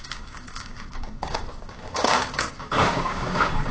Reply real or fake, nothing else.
fake